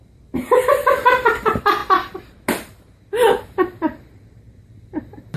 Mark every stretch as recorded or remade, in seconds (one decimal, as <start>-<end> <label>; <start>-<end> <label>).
0.0-5.4 recorded

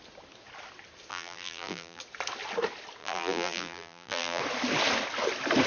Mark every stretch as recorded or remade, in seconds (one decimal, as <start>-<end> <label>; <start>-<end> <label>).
0.0-1.1 recorded; 1.1-2.0 remade; 2.0-3.0 recorded; 3.0-4.4 remade; 4.4-5.7 recorded